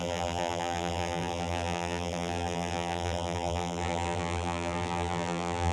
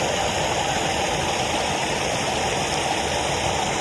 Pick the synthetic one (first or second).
first